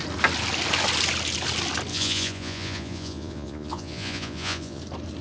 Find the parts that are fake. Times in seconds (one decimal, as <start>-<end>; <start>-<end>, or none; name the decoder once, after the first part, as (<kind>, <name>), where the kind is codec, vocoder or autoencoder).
1.9-4.8 (vocoder, Vocos)